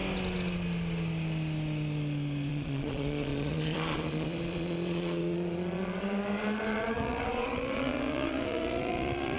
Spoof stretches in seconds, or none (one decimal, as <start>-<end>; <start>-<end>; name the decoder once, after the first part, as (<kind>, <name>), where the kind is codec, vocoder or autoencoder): 2.5-9.4 (vocoder, Vocos)